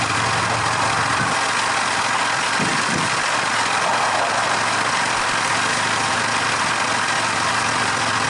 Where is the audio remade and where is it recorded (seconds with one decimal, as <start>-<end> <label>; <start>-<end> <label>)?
0.0-2.7 recorded; 2.7-5.7 remade; 5.7-8.3 recorded